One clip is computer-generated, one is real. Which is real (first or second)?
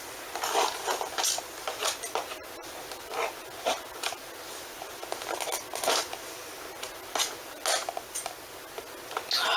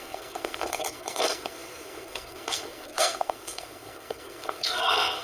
first